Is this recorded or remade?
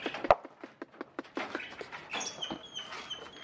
recorded